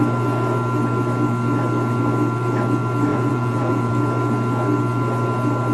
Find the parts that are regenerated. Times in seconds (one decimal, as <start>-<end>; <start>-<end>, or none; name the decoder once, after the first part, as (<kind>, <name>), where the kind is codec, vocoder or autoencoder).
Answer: 3.1-3.9 (vocoder, Vocos)